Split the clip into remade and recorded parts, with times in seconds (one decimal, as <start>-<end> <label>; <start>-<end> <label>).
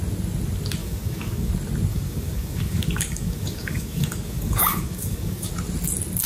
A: 0.0-0.8 recorded; 0.8-1.5 remade; 1.5-1.9 recorded; 1.9-5.5 remade; 5.5-6.3 recorded